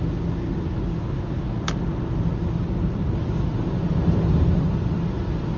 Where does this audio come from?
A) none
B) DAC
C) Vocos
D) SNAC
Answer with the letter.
A